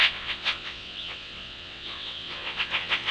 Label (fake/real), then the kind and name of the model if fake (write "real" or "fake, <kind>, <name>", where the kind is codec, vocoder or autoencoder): fake, vocoder, WaveNeXt